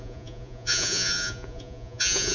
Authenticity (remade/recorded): remade